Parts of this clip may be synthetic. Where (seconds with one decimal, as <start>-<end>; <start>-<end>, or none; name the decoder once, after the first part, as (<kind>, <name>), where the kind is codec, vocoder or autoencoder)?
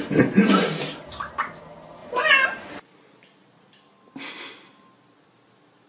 0.4-1.6 (vocoder, BigVGAN v2); 2.0-3.7